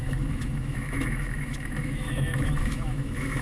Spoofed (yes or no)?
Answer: yes